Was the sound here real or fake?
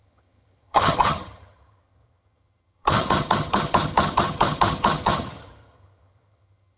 fake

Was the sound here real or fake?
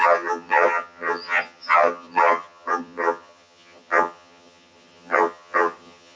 fake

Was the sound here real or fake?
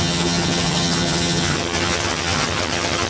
fake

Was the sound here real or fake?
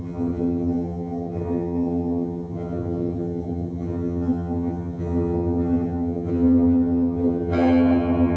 fake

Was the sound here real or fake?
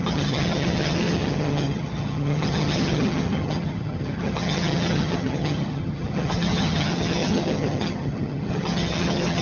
fake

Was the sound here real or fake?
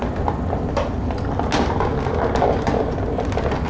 real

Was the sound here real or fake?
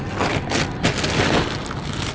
real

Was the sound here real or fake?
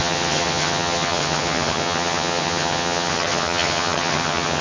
fake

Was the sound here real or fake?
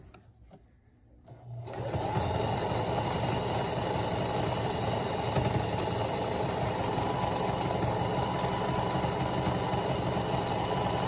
real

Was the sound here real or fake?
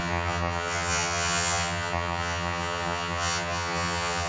fake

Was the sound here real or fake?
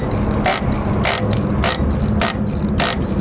real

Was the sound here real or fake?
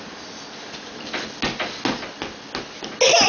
real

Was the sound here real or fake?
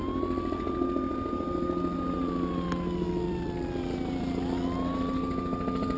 real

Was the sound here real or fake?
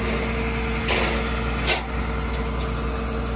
real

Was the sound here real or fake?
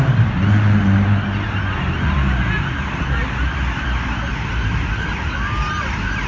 real